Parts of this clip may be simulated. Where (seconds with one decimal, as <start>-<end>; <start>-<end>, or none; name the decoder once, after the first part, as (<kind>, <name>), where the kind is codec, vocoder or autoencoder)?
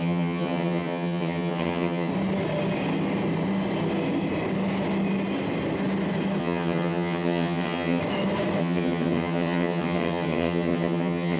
0.0-2.1 (vocoder, HiFi-GAN); 6.4-8.0; 8.6-11.4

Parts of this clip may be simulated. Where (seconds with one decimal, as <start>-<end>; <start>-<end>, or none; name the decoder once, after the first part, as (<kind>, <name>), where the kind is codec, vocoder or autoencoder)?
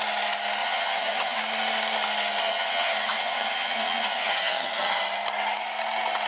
0.6-1.4 (vocoder, HiFi-GAN); 2.4-5.0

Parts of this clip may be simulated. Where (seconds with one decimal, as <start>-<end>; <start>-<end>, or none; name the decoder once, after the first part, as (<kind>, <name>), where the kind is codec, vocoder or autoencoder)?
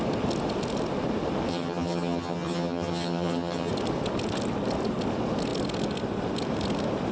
1.5-3.7 (vocoder, HiFi-GAN)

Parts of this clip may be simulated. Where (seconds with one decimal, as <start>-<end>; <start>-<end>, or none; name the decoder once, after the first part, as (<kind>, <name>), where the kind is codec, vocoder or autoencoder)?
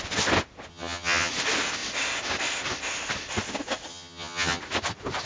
0.7-1.3 (vocoder, HiFi-GAN); 3.9-4.6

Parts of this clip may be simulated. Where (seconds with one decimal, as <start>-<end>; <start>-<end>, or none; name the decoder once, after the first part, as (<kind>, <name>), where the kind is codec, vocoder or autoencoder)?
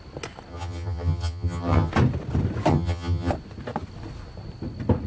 0.5-1.9 (vocoder, HiFi-GAN); 2.7-3.3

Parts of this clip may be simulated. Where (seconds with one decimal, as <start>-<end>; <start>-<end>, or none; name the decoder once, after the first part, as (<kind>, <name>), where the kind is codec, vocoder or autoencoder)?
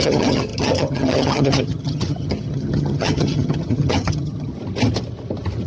0.0-4.5 (vocoder, HiFi-GAN)